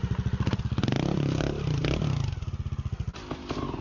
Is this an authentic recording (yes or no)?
yes